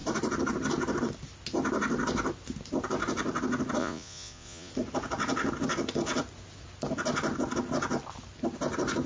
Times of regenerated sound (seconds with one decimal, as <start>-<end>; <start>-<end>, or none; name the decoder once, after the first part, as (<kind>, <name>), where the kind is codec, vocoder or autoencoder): 3.8-4.7 (vocoder, Vocos)